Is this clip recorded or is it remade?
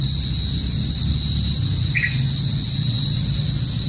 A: recorded